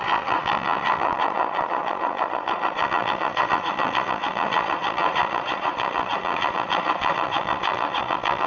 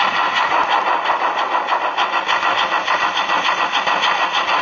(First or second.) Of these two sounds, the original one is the second